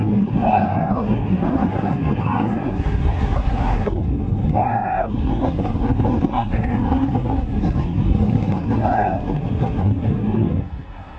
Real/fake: fake